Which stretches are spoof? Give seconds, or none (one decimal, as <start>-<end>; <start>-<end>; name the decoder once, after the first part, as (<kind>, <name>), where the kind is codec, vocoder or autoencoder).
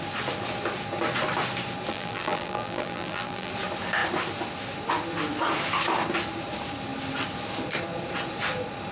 1.9-3.5 (vocoder, BigVGAN v2)